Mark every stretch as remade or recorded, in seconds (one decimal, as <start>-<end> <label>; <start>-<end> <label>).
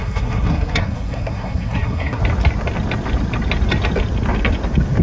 0.0-2.2 remade; 2.2-5.0 recorded